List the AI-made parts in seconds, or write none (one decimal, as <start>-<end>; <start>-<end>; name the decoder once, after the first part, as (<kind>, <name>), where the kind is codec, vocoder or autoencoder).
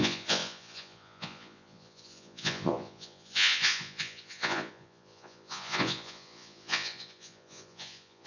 0.0-8.3 (vocoder, Vocos)